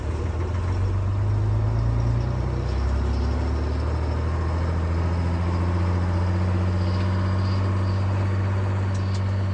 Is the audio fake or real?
real